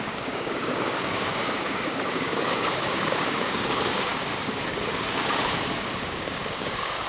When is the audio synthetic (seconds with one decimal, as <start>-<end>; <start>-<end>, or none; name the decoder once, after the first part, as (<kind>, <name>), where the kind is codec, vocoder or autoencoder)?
0.0-7.1 (codec, DAC)